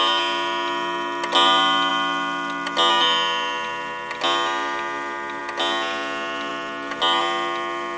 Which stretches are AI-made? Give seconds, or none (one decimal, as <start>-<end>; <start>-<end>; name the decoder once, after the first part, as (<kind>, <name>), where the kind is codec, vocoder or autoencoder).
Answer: none